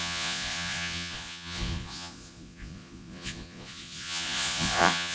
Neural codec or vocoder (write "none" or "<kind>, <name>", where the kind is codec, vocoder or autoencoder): vocoder, Vocos